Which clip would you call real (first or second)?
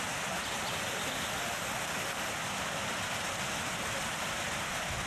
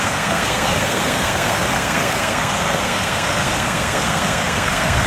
first